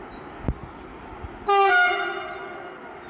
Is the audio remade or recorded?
recorded